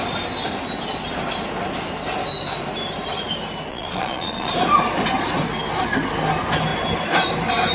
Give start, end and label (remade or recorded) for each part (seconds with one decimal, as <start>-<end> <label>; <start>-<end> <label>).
0.0-3.7 recorded; 3.7-4.5 remade; 4.5-7.7 recorded